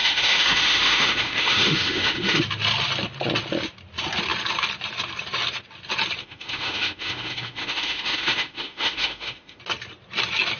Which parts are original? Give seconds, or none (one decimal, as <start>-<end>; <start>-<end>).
2.4-6.2; 9.6-10.6